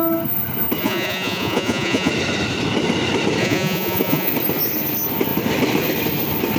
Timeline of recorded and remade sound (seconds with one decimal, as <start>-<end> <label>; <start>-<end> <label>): 0.0-0.8 recorded; 0.8-2.1 remade; 2.1-3.4 recorded; 3.4-4.3 remade; 4.3-6.6 recorded